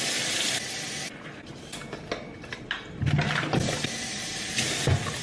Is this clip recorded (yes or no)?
yes